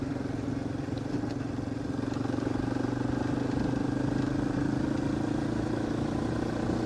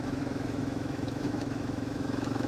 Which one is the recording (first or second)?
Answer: first